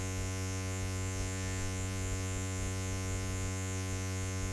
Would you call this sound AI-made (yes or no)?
yes